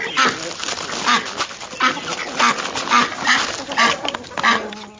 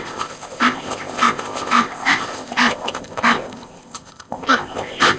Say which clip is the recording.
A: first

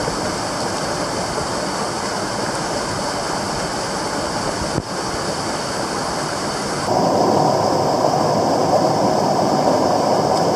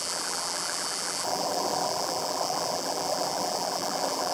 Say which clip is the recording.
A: first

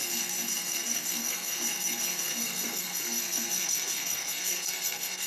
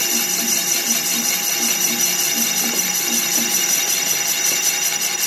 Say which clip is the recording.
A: second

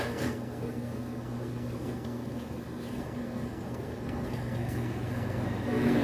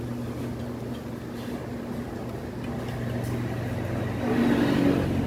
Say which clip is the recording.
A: second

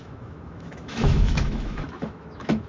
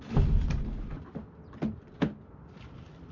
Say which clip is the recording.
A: second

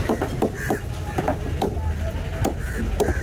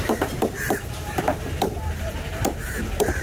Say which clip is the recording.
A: first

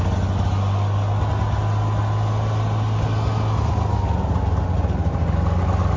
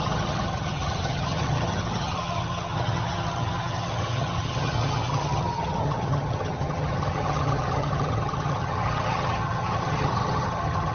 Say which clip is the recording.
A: first